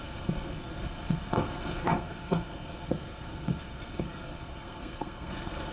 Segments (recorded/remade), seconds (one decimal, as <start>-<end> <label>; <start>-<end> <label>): 0.0-5.7 remade